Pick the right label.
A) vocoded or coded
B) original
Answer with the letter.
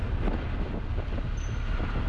B